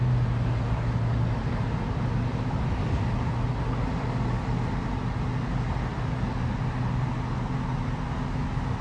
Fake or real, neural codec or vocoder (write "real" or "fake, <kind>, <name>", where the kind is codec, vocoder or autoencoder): real